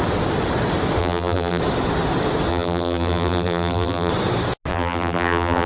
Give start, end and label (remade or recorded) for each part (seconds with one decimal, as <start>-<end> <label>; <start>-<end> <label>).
0.0-1.0 recorded; 1.0-1.6 remade; 1.6-2.5 recorded; 2.5-4.1 remade; 4.1-4.7 recorded; 4.7-5.7 remade